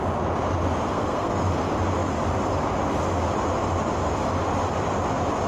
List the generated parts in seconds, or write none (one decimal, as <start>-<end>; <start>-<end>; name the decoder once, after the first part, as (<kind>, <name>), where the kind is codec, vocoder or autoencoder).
0.9-1.4 (codec, SNAC)